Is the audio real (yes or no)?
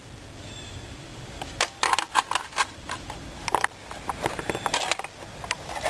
yes